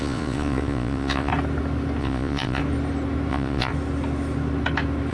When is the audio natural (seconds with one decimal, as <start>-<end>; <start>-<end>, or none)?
1.3-2.0; 2.6-3.3; 3.7-5.1